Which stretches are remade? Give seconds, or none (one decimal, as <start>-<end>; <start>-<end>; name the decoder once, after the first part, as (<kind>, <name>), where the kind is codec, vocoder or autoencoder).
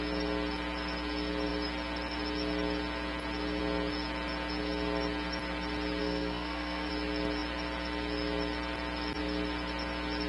6.0-6.9 (codec, SNAC)